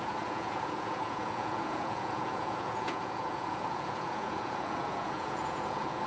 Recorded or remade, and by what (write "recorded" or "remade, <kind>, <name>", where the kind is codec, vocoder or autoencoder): remade, vocoder, Vocos